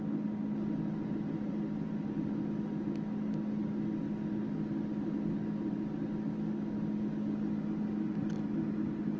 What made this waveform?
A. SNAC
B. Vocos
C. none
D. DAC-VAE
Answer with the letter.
C